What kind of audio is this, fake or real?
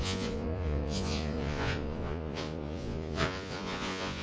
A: fake